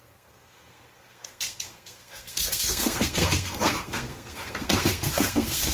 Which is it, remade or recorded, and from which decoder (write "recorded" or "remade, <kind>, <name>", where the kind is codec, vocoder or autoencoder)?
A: remade, codec, SNAC